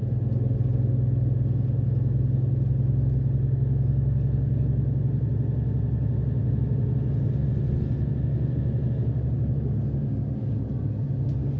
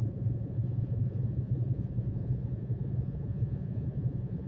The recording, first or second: first